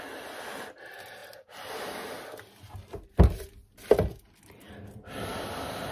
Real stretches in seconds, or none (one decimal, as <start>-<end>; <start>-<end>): 0.0-5.9